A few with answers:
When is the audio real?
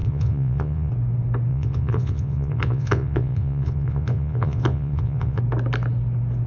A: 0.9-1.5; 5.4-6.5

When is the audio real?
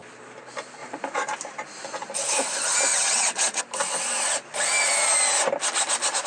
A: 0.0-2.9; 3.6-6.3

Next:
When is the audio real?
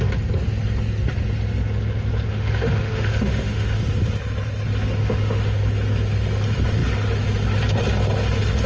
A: 0.0-2.3; 3.8-5.0; 5.6-8.7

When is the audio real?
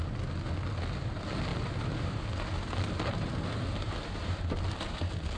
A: 0.0-1.5; 4.7-5.4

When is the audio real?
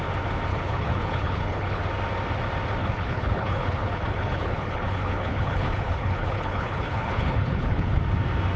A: 0.0-0.5; 1.8-2.8; 8.0-8.6